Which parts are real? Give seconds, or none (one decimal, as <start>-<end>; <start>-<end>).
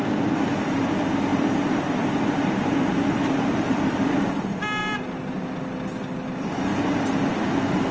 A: 0.0-1.3; 4.1-4.8; 5.3-7.9